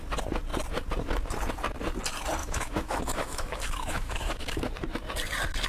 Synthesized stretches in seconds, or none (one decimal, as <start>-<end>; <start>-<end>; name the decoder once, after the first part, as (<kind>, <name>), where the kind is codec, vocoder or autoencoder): 2.4-4.7 (autoencoder, DAC-VAE)